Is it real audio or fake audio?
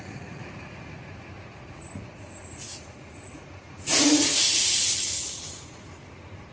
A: fake